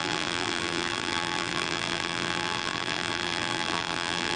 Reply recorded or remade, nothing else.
remade